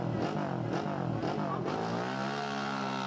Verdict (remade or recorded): recorded